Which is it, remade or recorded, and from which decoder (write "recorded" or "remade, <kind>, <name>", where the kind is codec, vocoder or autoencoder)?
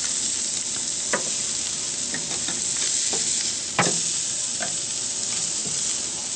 recorded